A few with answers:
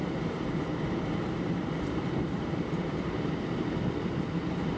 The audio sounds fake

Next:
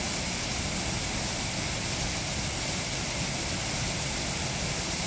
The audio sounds real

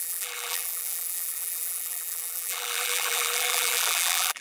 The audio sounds fake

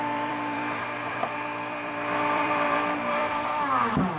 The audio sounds fake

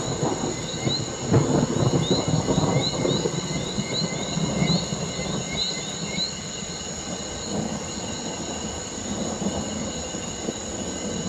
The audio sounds real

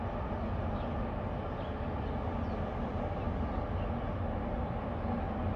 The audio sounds real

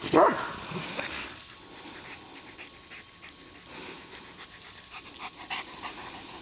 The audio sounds real